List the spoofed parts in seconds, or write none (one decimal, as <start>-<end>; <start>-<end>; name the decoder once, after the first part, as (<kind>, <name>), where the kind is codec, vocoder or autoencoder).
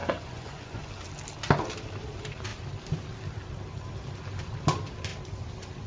0.0-0.9 (vocoder, Vocos)